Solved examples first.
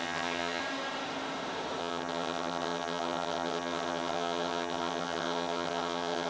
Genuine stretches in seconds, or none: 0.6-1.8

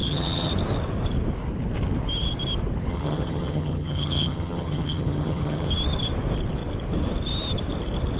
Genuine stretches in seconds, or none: 0.5-2.9; 5.7-8.2

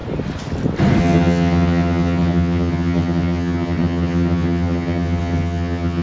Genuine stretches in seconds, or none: 0.0-1.0

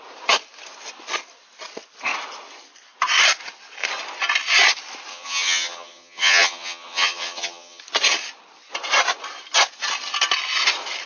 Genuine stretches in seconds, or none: 0.0-5.1; 7.8-11.1